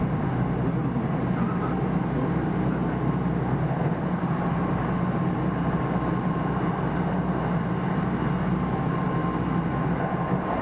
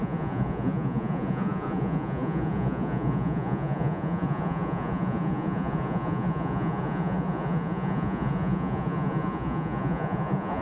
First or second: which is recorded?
first